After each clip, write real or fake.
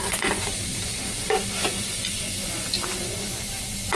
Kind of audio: fake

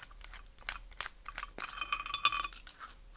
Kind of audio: real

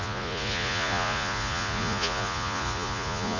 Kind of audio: fake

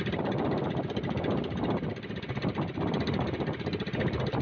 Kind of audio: real